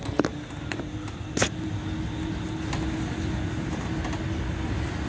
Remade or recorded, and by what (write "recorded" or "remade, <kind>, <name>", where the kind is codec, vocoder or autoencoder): recorded